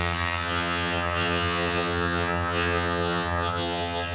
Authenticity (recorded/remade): remade